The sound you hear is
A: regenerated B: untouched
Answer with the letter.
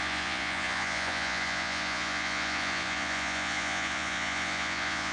A